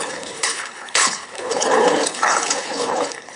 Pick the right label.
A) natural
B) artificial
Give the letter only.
B